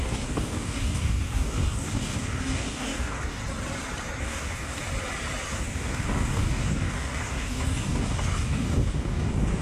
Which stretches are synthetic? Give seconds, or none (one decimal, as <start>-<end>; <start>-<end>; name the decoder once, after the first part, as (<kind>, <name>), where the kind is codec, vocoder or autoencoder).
0.0-3.4 (codec, DAC); 4.2-4.8; 5.5-9.6